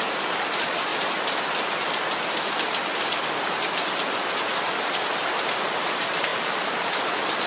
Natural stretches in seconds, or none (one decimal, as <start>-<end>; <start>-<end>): 0.9-4.4